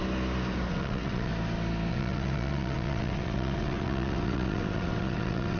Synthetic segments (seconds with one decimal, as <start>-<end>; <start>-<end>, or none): 0.7-1.3; 1.9-5.6